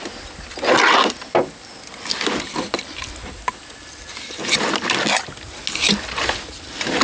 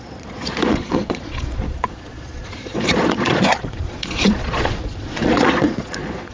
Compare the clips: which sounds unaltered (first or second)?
first